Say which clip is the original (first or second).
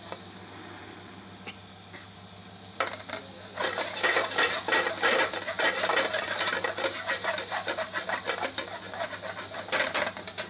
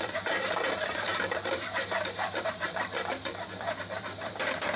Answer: first